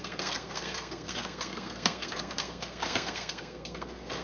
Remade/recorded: remade